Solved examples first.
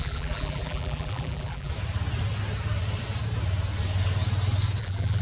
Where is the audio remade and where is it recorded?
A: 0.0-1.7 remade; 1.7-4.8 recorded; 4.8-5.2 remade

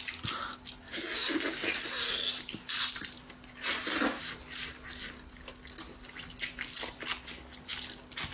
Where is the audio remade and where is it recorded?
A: 0.0-8.3 recorded

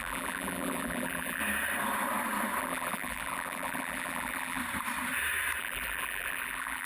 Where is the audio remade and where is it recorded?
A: 0.0-1.4 remade; 1.4-2.6 recorded; 2.6-4.6 remade; 4.6-5.6 recorded; 5.6-6.9 remade

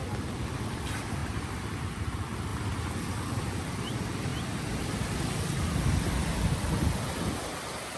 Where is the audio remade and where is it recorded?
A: 0.0-2.5 remade; 2.5-3.0 recorded; 3.0-8.0 remade